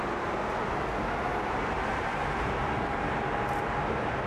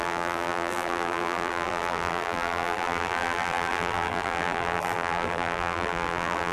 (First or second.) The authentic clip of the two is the first